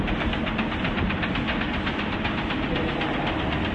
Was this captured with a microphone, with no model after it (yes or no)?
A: yes